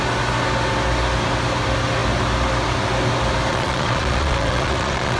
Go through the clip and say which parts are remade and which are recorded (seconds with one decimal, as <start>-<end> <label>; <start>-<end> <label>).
0.0-3.5 recorded; 3.5-5.2 remade